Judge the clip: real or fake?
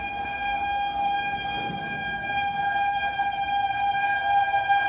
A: fake